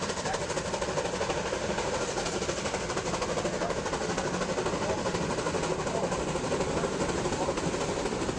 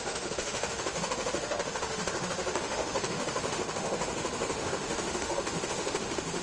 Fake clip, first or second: second